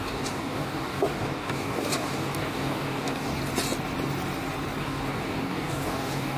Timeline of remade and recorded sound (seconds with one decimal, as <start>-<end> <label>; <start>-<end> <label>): 0.0-3.4 remade; 3.4-4.8 recorded; 4.8-6.4 remade